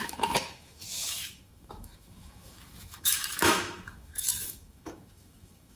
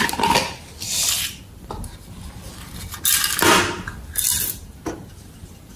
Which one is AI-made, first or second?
first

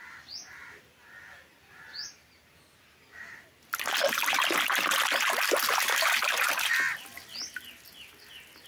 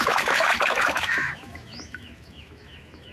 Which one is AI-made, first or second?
second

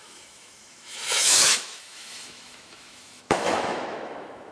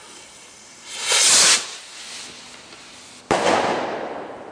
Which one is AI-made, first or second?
first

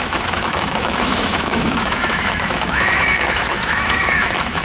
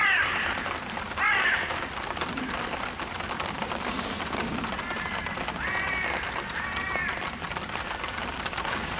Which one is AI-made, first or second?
first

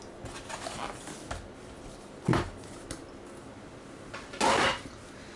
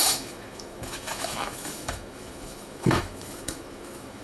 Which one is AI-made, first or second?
second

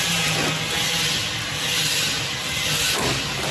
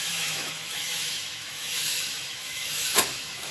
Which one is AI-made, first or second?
second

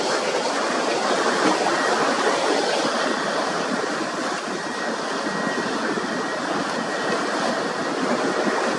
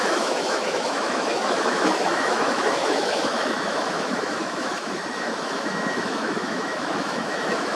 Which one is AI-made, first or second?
second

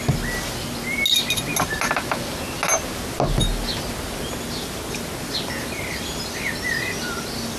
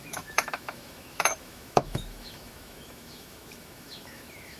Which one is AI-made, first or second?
second